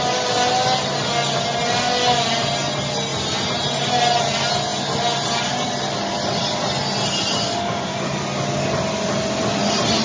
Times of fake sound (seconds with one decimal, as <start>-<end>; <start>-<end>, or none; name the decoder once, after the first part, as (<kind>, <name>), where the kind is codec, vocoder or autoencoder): none